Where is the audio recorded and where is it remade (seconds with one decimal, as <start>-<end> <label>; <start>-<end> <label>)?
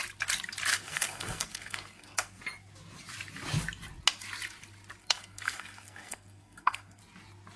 0.0-0.7 recorded; 0.7-2.4 remade; 2.4-5.0 recorded; 5.0-7.0 remade; 7.0-7.6 recorded